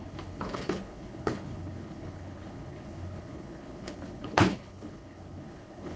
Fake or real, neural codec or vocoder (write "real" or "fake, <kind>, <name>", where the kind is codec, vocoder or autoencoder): fake, codec, HILCodec